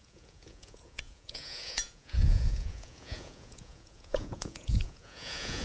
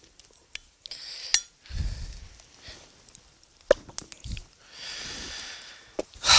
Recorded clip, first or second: second